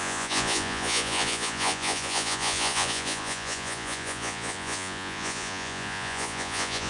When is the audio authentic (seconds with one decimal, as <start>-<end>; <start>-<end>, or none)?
none